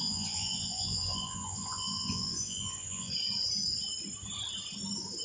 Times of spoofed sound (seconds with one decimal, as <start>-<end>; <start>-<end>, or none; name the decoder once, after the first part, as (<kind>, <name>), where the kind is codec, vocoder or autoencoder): 0.0-3.1 (vocoder, Vocos)